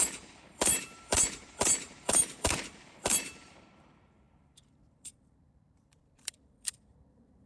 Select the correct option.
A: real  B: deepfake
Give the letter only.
B